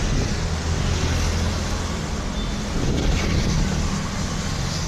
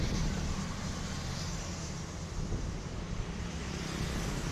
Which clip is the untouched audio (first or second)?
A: first